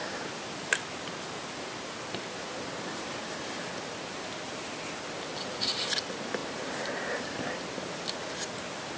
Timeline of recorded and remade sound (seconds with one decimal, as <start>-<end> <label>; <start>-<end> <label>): 0.0-9.0 recorded